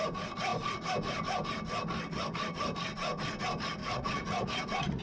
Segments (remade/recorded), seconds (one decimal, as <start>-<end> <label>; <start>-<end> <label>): 0.0-3.8 recorded; 3.8-5.0 remade